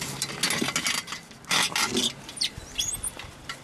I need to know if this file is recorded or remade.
recorded